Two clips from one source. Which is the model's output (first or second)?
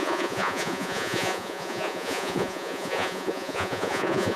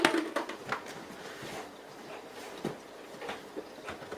first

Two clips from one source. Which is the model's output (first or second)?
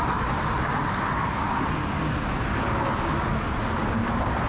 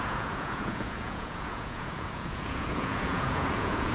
second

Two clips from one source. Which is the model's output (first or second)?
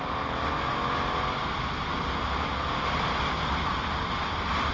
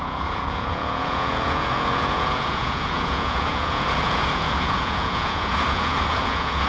second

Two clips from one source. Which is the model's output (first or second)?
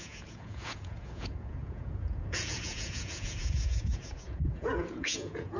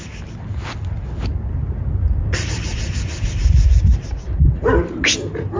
first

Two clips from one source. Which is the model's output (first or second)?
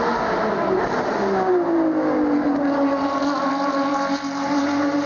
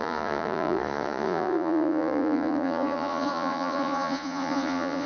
second